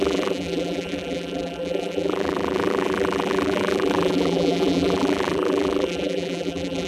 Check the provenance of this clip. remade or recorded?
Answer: remade